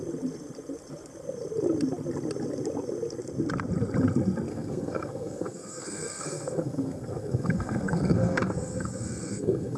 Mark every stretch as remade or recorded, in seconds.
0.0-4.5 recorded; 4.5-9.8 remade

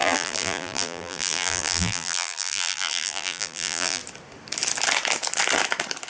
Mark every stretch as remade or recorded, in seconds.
0.0-4.0 remade; 4.0-6.1 recorded

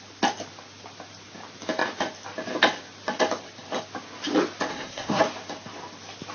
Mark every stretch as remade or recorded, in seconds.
0.0-4.7 recorded; 4.7-5.2 remade; 5.2-6.3 recorded

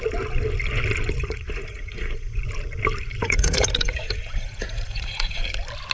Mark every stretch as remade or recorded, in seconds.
0.0-1.2 recorded; 1.2-2.4 remade; 2.4-3.2 recorded; 3.2-5.4 remade; 5.4-5.9 recorded

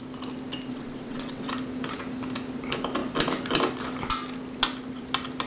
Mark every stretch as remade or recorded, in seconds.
0.0-0.7 recorded; 0.7-1.5 remade; 1.5-5.5 recorded